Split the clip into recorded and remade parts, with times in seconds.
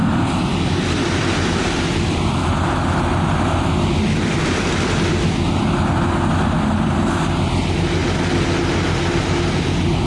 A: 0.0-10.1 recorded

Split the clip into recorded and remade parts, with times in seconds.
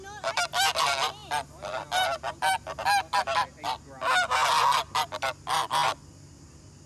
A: 0.0-6.9 recorded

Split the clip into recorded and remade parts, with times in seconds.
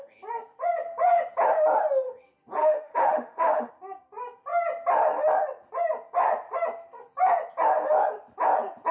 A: 0.0-2.6 recorded; 2.6-3.7 remade; 3.7-8.9 recorded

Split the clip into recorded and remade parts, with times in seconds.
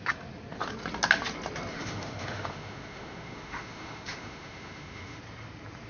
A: 0.0-1.7 recorded; 1.7-5.2 remade; 5.2-5.9 recorded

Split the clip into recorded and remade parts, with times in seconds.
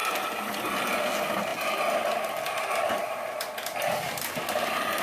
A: 0.0-5.0 recorded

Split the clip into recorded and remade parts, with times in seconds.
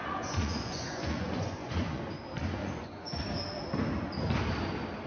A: 0.0-2.0 remade; 2.0-2.6 recorded; 2.6-3.2 remade; 3.2-5.1 recorded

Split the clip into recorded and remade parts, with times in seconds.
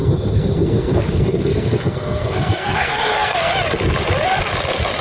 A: 0.0-3.5 remade; 3.5-5.0 recorded